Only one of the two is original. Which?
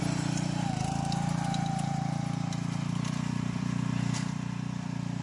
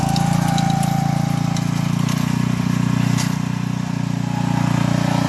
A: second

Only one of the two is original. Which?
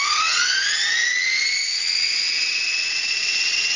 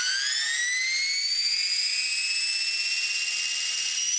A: second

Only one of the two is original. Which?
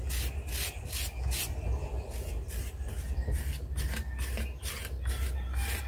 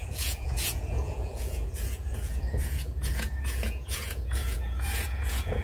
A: first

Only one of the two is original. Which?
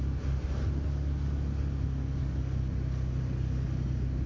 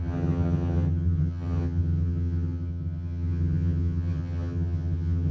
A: first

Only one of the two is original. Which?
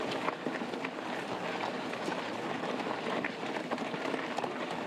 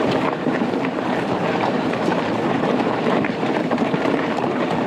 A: first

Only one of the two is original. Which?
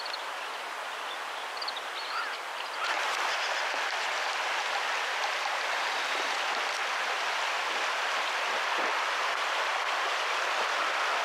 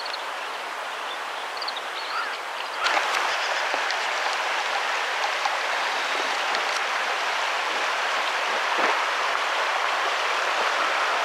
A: first